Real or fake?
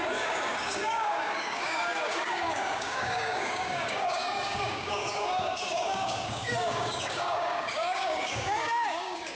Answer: fake